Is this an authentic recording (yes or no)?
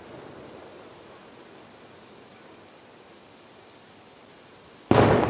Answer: yes